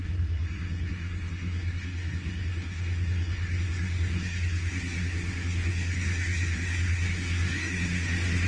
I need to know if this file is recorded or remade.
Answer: remade